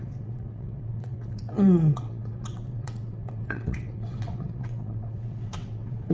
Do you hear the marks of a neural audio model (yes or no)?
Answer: yes